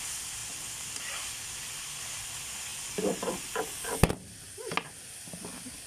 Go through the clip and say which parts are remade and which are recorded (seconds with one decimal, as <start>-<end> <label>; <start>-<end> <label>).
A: 0.0-5.9 recorded